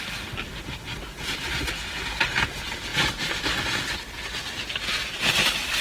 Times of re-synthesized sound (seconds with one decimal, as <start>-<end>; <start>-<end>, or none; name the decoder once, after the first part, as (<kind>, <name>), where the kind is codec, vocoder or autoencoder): none